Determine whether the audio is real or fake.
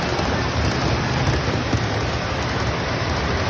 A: real